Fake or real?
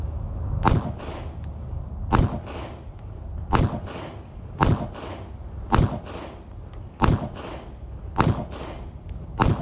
real